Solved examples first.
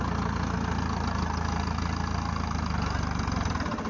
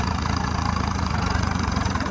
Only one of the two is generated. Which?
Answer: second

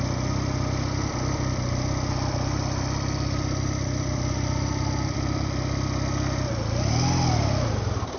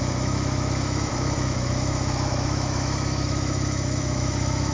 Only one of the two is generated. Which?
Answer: second